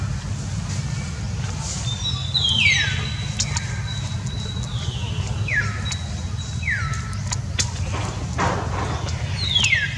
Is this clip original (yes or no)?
yes